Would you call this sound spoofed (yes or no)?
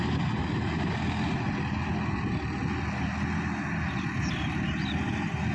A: no